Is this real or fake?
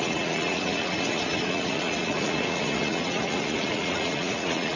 fake